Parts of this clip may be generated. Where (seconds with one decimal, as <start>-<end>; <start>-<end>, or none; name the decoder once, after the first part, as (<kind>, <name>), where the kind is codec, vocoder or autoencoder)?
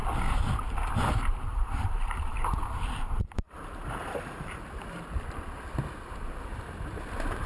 1.5-4.6 (vocoder, BigVGAN v2)